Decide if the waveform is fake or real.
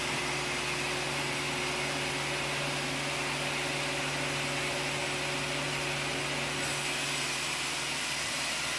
real